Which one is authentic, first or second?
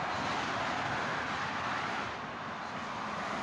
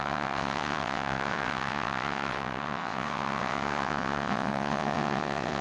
first